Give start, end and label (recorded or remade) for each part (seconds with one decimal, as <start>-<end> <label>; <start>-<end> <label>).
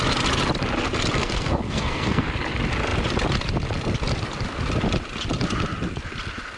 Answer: 0.0-1.2 recorded; 1.2-2.3 remade; 2.3-6.6 recorded